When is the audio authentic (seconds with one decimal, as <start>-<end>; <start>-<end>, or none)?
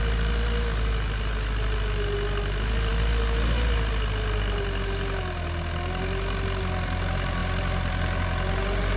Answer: 0.0-9.0